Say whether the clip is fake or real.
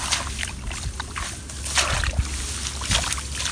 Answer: real